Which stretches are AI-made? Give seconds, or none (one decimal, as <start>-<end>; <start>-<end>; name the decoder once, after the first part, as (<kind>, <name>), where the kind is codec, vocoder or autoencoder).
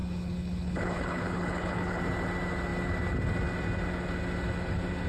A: 0.0-2.0 (codec, HILCodec)